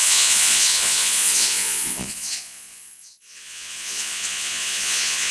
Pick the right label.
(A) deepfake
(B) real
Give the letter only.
A